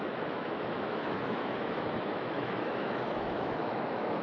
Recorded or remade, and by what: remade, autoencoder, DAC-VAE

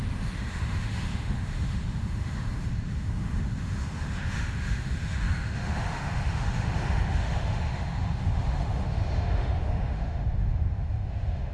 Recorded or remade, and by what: remade, autoencoder, DAC-VAE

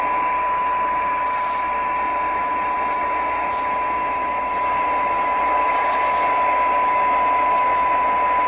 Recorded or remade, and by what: recorded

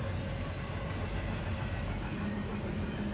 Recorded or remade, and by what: recorded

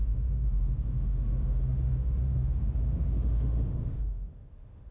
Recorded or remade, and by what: remade, autoencoder, DAC-VAE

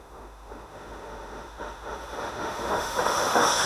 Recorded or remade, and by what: remade, autoencoder, DAC-VAE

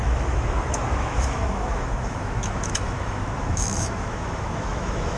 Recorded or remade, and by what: remade, autoencoder, DAC-VAE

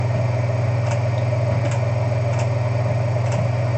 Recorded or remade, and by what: recorded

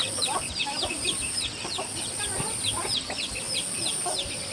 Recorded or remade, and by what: recorded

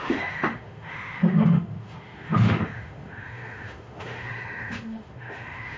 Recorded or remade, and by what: remade, autoencoder, DAC-VAE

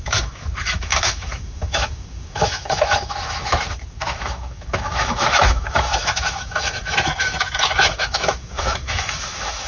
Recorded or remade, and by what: remade, autoencoder, DAC-VAE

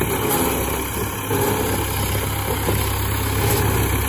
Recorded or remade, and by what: recorded